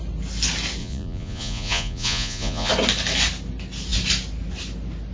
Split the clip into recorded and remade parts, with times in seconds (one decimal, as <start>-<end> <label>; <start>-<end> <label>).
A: 0.0-0.8 recorded; 0.8-2.7 remade; 2.7-5.1 recorded